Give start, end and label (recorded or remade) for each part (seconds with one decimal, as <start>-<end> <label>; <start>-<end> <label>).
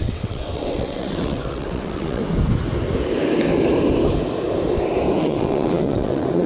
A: 0.0-2.2 remade; 2.2-5.2 recorded; 5.2-6.5 remade